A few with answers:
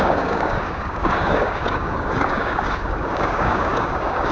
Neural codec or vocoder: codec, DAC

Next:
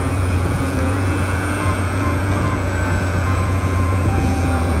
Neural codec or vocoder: vocoder, Vocos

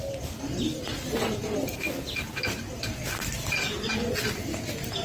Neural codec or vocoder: none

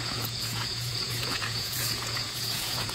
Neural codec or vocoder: vocoder, Vocos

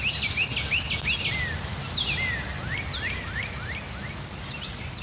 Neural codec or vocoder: none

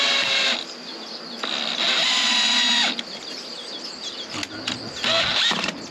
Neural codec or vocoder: none